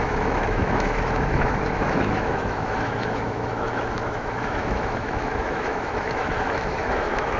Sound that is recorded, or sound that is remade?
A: remade